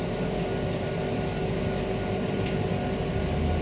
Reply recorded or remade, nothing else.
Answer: recorded